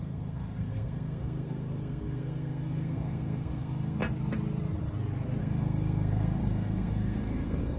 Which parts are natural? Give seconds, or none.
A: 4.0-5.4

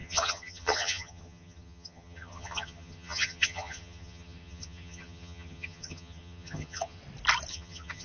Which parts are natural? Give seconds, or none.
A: 7.0-7.5

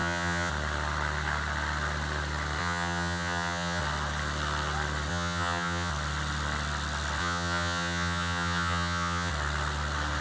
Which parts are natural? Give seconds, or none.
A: 0.5-2.6; 3.8-5.1; 5.9-7.2; 9.3-10.2